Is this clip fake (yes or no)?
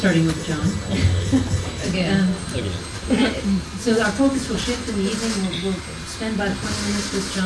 no